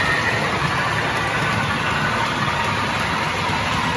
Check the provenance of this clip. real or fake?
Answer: real